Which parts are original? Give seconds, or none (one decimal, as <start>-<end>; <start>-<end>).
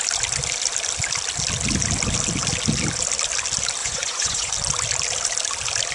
0.0-3.8; 4.5-5.9